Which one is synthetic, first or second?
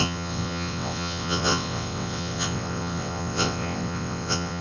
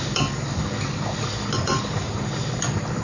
first